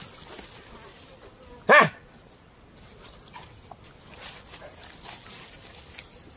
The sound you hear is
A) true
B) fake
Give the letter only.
A